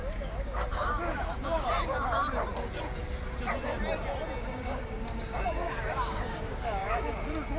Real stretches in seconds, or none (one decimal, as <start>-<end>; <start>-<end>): 2.2-4.4